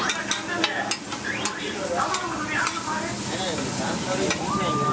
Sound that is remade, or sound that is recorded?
recorded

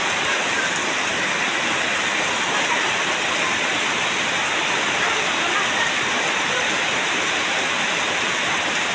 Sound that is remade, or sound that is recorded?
recorded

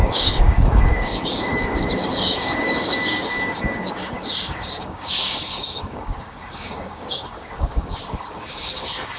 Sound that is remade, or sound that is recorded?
remade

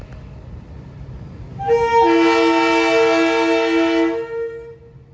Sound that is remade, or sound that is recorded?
recorded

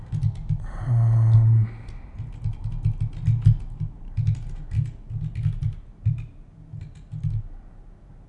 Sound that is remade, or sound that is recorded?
recorded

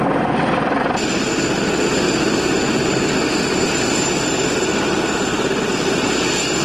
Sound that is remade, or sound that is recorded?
recorded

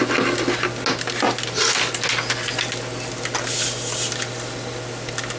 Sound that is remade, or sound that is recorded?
recorded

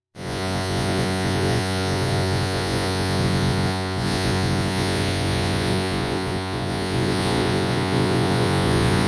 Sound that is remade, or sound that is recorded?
remade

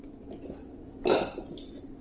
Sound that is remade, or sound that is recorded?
recorded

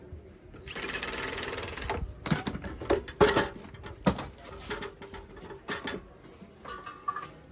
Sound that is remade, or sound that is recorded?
recorded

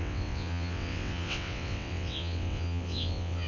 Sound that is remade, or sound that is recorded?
remade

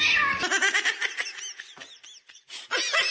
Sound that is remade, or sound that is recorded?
recorded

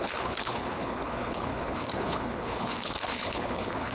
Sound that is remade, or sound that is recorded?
remade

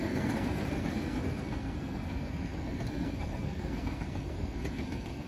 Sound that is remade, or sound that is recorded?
remade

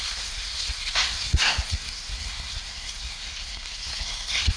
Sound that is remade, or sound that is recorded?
remade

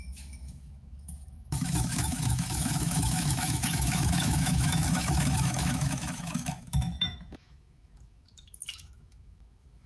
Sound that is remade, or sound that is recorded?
remade